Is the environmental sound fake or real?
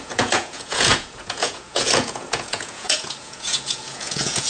fake